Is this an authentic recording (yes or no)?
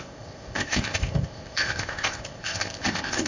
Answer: no